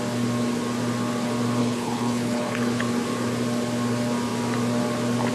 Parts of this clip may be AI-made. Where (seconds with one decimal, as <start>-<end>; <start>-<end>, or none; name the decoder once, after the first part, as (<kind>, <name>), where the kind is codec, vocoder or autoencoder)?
1.6-2.9 (codec, HILCodec)

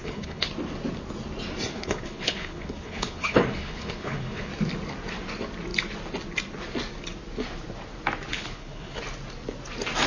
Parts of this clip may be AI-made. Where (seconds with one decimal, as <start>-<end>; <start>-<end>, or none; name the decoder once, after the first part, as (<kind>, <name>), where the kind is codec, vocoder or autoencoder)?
0.0-0.5 (codec, HILCodec); 1.7-4.5; 8.3-9.0